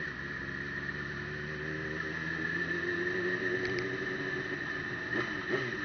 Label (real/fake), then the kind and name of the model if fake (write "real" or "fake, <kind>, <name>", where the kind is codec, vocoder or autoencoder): real